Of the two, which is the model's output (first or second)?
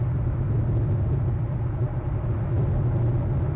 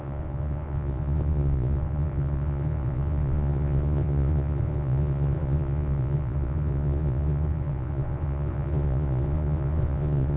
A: second